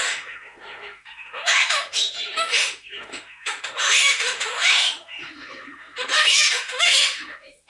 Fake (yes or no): yes